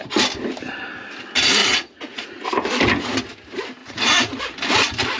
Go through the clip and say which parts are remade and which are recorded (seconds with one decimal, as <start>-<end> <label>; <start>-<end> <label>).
0.0-1.6 recorded; 1.6-2.5 remade; 2.5-3.8 recorded; 3.8-4.4 remade; 4.4-5.2 recorded